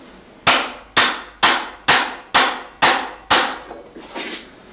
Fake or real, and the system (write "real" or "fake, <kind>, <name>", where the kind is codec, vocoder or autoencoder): real